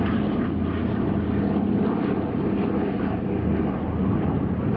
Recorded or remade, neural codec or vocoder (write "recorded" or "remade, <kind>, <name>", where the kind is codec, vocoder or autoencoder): recorded